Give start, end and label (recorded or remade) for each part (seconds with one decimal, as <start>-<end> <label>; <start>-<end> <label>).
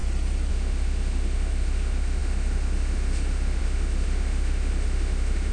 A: 0.0-0.5 recorded; 0.5-5.5 remade